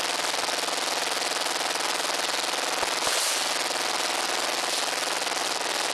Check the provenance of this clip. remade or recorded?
recorded